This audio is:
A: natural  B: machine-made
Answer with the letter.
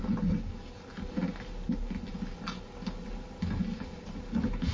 A